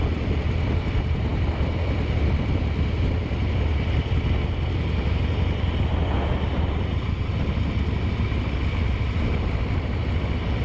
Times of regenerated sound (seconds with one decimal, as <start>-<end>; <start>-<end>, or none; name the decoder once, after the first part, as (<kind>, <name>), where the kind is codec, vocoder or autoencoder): none